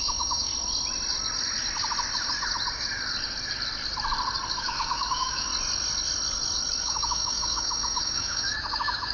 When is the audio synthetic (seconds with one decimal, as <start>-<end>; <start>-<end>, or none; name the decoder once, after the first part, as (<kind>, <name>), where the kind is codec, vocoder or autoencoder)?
0.0-0.5 (autoencoder, DAC-VAE); 4.6-5.5; 6.8-9.1